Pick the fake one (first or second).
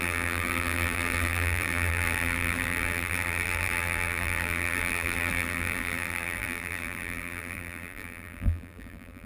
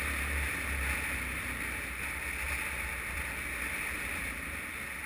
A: first